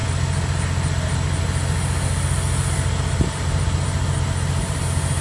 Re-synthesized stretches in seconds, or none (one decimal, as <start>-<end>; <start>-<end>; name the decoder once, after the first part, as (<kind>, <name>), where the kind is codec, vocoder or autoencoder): none